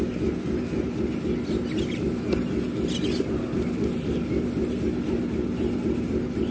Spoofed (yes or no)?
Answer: no